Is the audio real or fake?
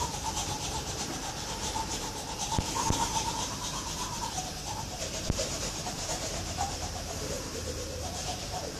fake